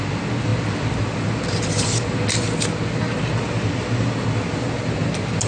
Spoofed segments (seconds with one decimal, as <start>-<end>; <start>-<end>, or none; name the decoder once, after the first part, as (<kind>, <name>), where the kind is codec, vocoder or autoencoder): none